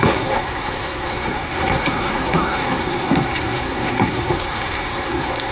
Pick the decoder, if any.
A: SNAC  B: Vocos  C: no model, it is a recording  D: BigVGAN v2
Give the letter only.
A